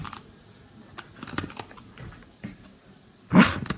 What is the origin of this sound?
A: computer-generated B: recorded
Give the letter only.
B